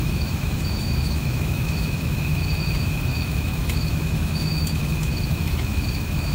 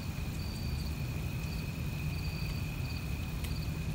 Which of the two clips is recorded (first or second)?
second